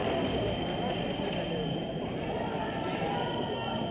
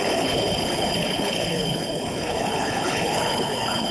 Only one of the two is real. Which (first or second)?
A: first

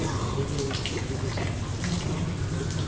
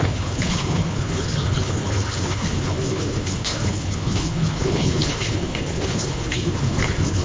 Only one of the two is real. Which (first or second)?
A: first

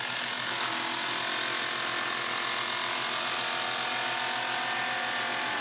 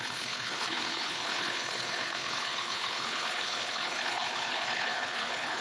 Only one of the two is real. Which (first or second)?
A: first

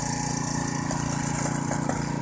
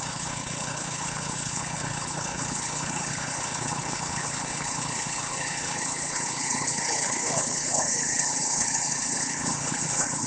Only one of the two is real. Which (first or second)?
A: first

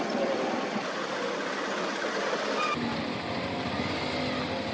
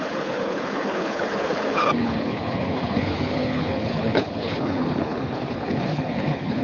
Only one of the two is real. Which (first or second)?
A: first